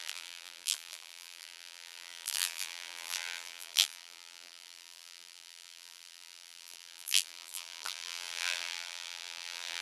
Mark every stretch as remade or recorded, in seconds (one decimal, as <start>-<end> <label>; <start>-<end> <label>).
0.0-9.8 remade